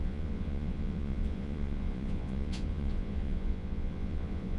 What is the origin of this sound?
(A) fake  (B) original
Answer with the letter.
A